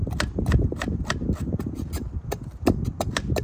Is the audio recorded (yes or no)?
yes